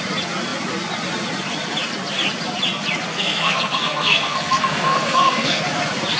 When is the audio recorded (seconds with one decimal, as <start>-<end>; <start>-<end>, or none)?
0.0-3.1; 5.6-6.2

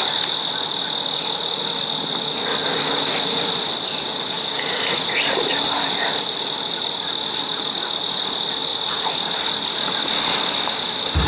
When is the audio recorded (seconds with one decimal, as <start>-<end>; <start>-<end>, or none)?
0.0-11.3

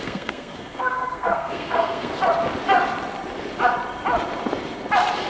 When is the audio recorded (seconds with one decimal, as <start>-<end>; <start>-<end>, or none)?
2.1-5.3

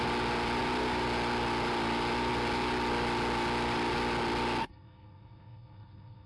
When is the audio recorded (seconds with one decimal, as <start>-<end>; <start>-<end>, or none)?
0.0-4.6

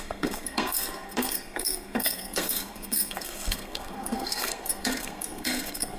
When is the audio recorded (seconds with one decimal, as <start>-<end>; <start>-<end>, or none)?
none